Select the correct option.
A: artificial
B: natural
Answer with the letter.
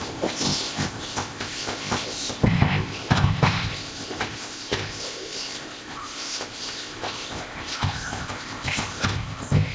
A